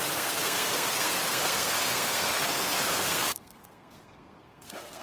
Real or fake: fake